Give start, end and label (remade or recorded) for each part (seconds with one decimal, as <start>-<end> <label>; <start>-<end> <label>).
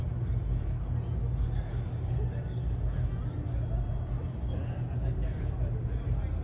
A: 0.0-6.4 recorded